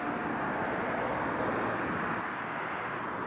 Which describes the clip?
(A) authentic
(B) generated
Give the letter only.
A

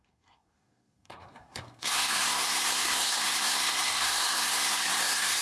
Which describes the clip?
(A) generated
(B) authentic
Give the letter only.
A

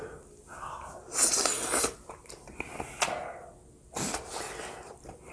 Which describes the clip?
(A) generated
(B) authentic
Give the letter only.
B